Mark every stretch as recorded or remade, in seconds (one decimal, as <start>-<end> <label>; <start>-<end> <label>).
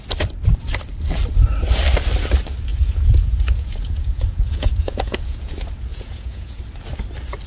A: 0.0-2.7 recorded; 2.7-5.5 remade; 5.5-5.9 recorded; 5.9-6.6 remade; 6.6-7.5 recorded